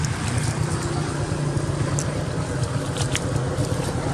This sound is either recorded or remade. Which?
recorded